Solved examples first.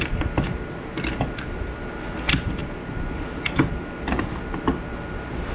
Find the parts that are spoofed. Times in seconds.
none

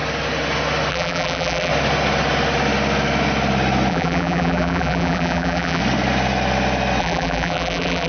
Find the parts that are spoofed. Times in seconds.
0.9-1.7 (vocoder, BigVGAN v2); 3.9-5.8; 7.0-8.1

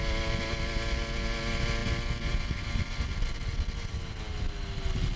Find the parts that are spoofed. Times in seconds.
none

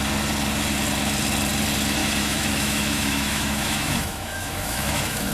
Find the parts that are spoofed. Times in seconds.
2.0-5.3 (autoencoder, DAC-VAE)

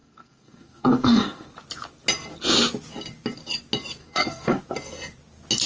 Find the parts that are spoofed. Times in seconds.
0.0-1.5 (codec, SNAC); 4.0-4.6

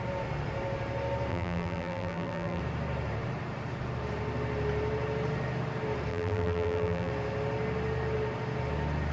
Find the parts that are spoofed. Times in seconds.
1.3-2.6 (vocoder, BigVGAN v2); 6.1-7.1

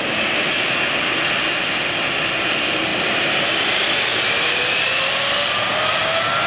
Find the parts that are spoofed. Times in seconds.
2.9-3.5 (vocoder, BigVGAN v2)

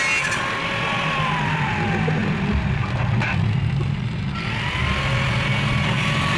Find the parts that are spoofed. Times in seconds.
none